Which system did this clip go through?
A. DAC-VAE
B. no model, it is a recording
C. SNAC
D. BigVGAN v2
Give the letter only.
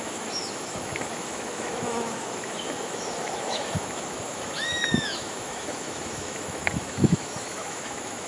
A